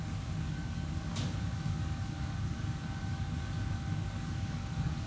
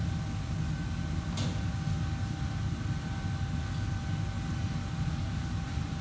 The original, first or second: second